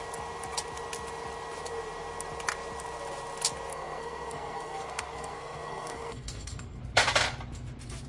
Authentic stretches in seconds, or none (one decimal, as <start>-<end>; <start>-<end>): 0.0-3.7; 6.8-8.1